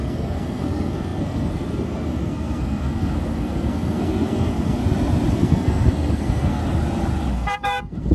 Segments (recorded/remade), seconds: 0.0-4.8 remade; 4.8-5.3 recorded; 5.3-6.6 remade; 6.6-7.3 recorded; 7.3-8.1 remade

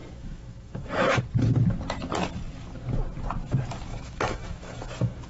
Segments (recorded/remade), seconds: 0.0-1.2 remade; 1.2-3.9 recorded; 3.9-5.3 remade